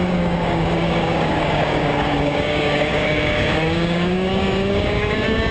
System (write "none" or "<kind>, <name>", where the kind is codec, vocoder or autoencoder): codec, DAC